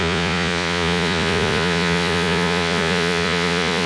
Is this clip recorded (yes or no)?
no